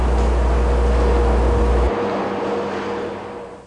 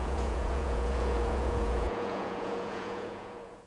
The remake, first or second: second